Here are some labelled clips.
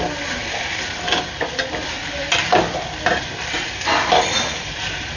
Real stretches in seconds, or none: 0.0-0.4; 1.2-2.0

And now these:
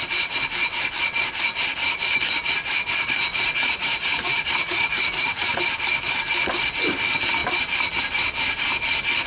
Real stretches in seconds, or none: 0.0-3.3; 5.6-9.3

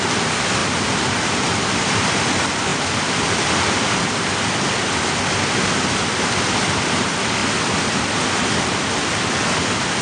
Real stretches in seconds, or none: 0.0-10.0

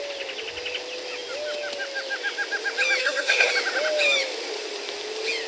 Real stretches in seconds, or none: 0.0-3.0; 3.5-5.5

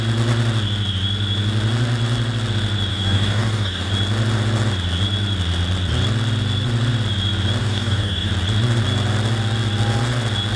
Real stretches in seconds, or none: 0.0-2.9; 3.9-7.6; 8.3-10.6